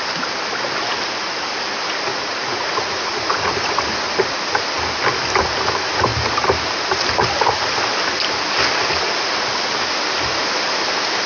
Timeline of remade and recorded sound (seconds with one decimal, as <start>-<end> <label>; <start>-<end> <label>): 0.0-2.1 recorded; 2.1-3.7 remade; 3.7-11.3 recorded